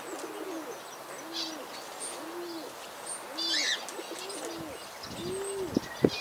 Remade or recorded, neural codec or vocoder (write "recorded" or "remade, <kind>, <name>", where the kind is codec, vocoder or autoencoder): recorded